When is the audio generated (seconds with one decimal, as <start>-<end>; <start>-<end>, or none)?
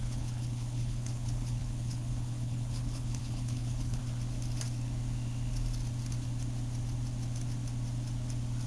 0.0-4.0